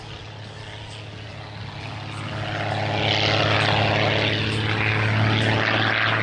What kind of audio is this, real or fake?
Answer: real